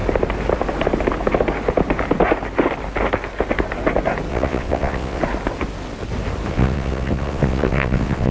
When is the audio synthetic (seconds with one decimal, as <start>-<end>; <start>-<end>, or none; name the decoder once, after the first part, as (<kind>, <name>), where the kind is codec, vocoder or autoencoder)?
4.3-5.2 (vocoder, WaveNeXt); 6.5-8.3